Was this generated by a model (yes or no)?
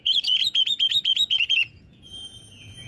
yes